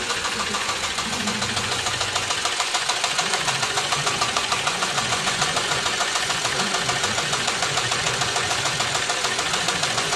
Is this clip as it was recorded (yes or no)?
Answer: no